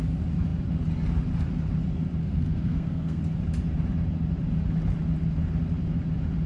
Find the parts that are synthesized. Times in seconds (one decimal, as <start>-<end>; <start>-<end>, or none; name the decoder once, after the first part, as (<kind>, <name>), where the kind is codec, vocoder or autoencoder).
2.2-3.2 (codec, SNAC)